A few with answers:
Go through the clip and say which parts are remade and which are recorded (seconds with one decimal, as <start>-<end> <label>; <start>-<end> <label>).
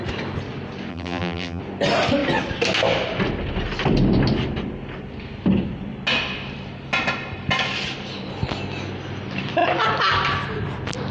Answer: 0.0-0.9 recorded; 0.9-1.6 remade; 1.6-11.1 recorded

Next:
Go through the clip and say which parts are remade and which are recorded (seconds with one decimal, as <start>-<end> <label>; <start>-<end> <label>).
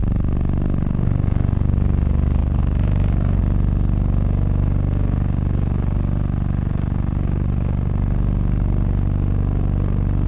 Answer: 0.0-2.4 recorded; 2.4-3.4 remade; 3.4-10.3 recorded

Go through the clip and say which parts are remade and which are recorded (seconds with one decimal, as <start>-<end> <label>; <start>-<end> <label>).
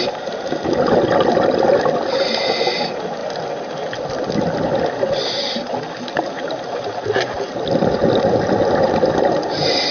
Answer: 0.0-9.9 recorded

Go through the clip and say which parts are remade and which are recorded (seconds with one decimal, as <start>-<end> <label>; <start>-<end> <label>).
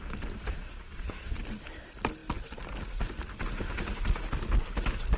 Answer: 0.0-0.5 recorded; 0.5-1.4 remade; 1.4-5.2 recorded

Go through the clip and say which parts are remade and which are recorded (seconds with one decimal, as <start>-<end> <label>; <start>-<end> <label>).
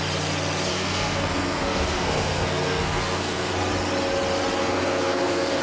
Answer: 0.0-0.7 recorded; 0.7-3.5 remade; 3.5-4.6 recorded; 4.6-5.6 remade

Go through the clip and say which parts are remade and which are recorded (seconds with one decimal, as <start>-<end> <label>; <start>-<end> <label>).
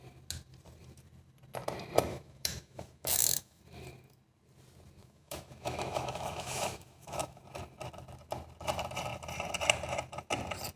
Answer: 0.0-2.1 recorded; 2.1-3.6 remade; 3.6-5.0 recorded; 5.0-7.4 remade; 7.4-10.8 recorded